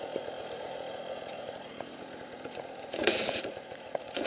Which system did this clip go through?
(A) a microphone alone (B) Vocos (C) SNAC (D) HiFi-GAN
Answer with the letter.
B